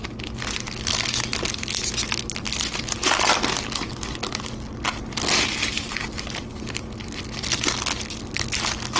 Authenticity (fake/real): real